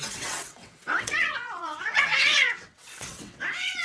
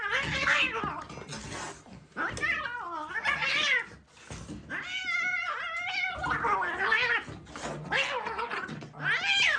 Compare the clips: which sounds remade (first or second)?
first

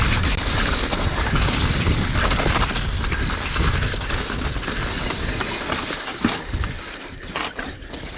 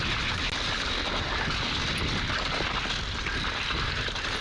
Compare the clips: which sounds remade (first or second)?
first